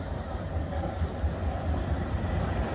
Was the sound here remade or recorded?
recorded